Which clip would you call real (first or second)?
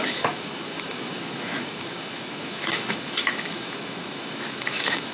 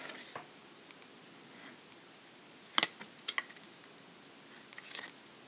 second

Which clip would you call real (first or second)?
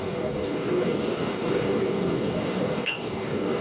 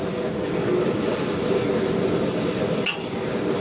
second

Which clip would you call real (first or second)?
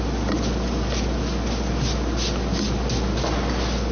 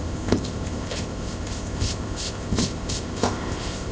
first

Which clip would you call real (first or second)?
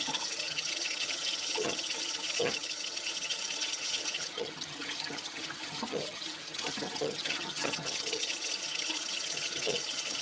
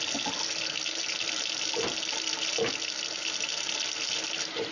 second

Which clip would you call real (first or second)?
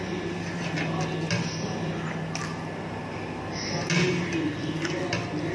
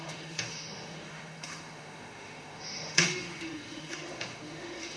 first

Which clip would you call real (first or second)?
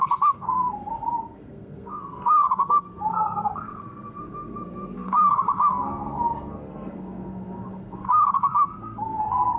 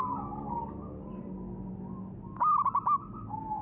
second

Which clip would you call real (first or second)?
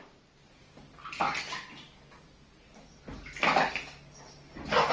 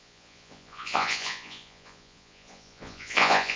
first